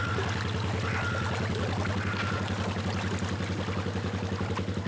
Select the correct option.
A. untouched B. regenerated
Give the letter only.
A